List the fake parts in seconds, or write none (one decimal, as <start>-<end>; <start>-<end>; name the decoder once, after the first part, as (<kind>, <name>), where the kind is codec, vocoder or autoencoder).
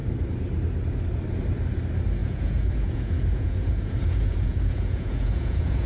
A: 2.2-5.9 (vocoder, Vocos)